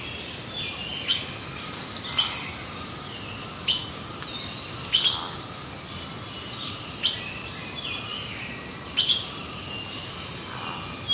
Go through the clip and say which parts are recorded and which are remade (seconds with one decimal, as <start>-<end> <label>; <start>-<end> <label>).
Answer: 0.0-0.9 recorded; 0.9-3.2 remade; 3.2-11.1 recorded